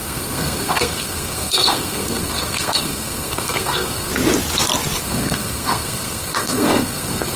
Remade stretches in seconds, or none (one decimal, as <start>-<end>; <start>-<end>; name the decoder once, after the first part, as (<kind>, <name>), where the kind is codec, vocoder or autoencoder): 0.0-4.1 (codec, SNAC); 5.0-7.4